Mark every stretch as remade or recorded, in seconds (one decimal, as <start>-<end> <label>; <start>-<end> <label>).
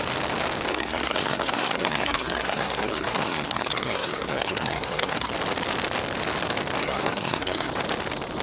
0.0-0.7 recorded; 0.7-5.3 remade; 5.3-6.8 recorded; 6.8-7.7 remade; 7.7-8.4 recorded